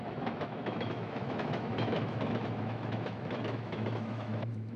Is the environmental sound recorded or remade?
remade